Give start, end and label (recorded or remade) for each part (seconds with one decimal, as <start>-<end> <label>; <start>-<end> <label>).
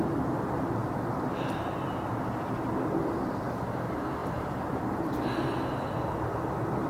0.0-4.2 recorded; 4.2-5.4 remade; 5.4-6.9 recorded